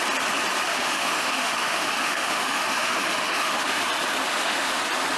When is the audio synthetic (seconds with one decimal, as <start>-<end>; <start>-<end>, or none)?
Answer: 0.7-3.8; 4.3-4.8